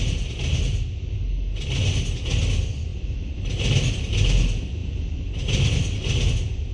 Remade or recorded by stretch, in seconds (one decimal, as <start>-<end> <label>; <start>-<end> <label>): 0.0-6.7 recorded